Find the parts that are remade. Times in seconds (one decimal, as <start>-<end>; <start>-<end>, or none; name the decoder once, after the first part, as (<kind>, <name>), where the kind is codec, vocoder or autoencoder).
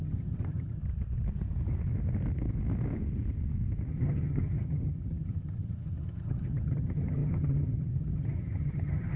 0.0-0.8 (vocoder, HiFi-GAN); 3.9-9.2